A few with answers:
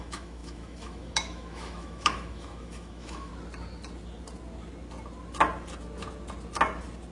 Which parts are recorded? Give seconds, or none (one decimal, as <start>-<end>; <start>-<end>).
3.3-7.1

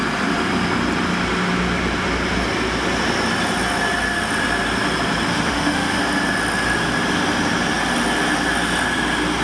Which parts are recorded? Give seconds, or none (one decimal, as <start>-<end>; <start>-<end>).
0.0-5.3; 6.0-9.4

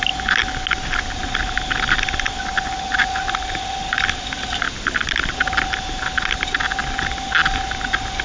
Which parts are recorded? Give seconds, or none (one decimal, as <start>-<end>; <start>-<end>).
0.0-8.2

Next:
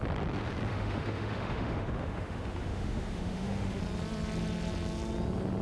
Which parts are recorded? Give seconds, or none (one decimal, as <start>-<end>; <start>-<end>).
0.0-0.7; 3.8-5.6